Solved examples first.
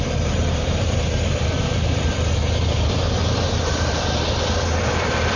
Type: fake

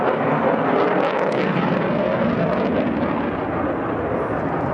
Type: real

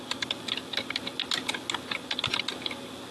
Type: real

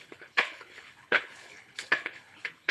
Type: fake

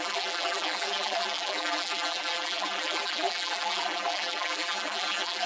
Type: fake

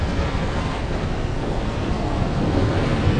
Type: fake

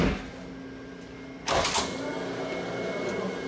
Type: real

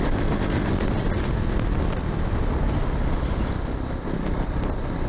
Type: real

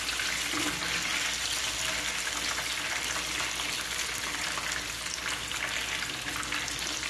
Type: real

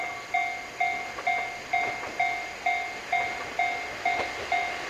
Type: real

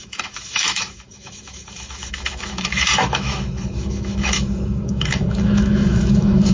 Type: fake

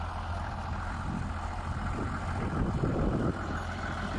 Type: real